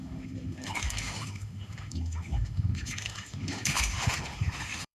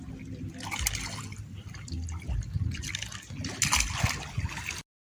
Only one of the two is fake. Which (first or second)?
first